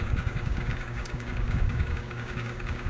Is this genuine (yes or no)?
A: no